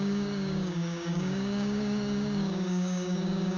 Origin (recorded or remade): remade